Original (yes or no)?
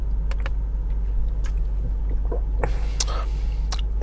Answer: yes